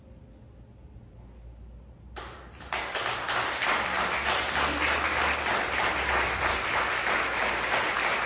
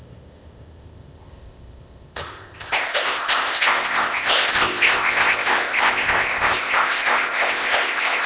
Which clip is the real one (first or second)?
first